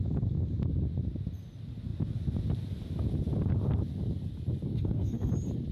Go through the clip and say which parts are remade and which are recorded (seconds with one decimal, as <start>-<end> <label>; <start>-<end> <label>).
0.0-4.7 recorded; 4.7-5.3 remade; 5.3-5.7 recorded